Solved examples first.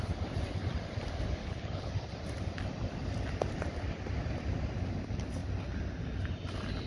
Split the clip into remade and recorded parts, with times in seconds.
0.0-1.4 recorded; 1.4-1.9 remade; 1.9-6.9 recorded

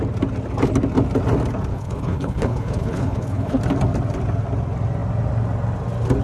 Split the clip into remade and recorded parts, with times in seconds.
0.0-1.7 recorded; 1.7-3.6 remade; 3.6-6.2 recorded